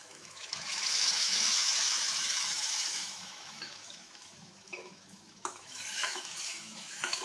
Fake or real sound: fake